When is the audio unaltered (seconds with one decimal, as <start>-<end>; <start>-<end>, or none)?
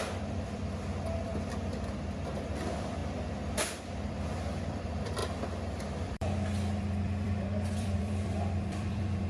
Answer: 1.3-1.9; 3.0-4.7; 5.2-5.8